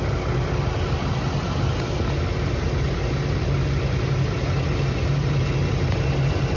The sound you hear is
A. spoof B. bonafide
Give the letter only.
B